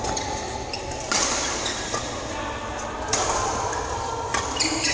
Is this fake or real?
real